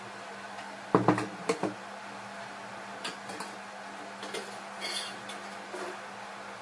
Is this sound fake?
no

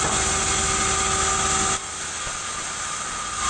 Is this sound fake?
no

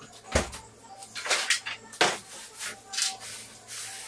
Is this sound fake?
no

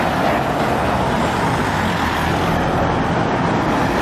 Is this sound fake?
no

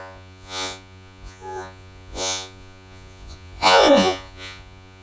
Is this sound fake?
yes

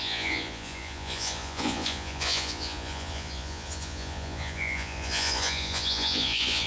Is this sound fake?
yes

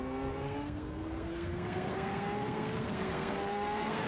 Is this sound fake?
yes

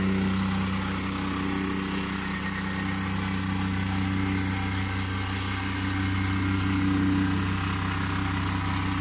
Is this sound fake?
no